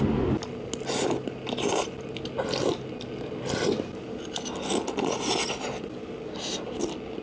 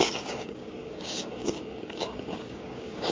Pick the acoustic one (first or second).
first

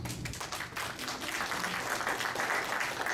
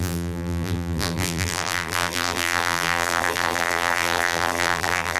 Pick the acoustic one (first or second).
first